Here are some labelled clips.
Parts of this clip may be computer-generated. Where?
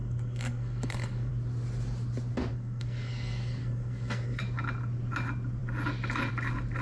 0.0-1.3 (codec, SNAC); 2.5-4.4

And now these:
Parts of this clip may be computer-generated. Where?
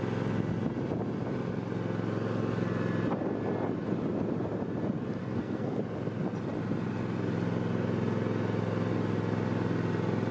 5.2-5.8 (codec, SNAC)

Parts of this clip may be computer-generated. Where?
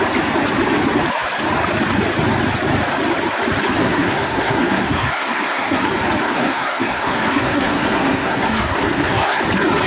3.8-5.8 (codec, SNAC); 6.2-9.4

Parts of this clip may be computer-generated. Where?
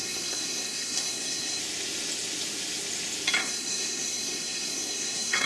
0.0-1.6 (codec, SNAC); 3.4-5.5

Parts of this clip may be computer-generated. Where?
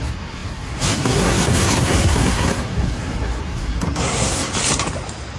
0.0-4.5 (codec, SNAC)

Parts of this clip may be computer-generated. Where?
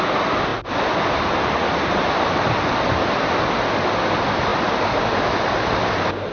none